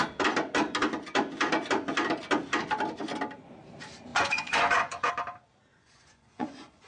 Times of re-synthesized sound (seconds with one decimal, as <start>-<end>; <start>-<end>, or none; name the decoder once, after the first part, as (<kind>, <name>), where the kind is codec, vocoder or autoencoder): 4.1-5.1 (vocoder, Vocos); 5.7-6.9